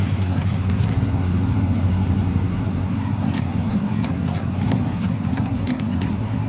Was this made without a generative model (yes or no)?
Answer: no